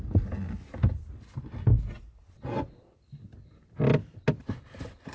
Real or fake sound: real